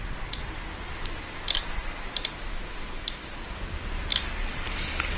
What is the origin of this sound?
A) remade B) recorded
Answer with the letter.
A